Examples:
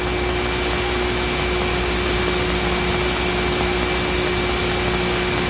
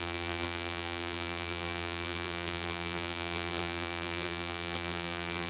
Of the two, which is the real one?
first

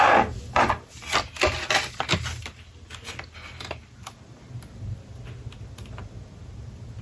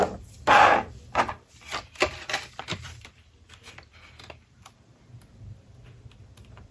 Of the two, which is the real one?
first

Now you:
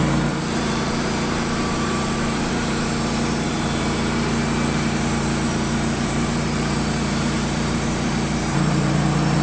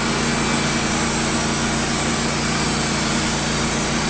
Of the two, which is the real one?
second